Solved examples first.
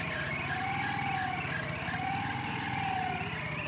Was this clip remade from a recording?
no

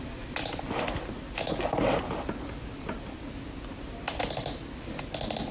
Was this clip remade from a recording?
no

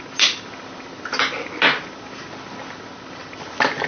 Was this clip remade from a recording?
no